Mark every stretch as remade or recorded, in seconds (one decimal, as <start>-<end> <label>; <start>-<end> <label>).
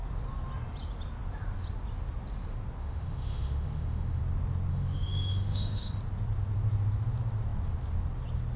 0.0-2.8 recorded; 2.8-4.2 remade; 4.2-4.7 recorded; 4.7-5.9 remade; 5.9-8.6 recorded